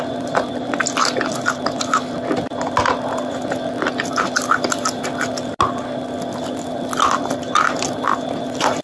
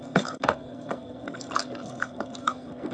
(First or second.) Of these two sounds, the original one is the first